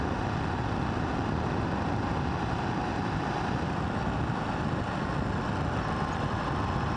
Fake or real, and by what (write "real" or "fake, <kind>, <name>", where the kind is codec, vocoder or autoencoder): real